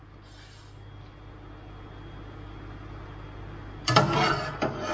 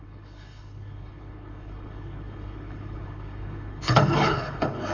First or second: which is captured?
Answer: first